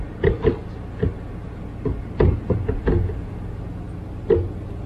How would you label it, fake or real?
real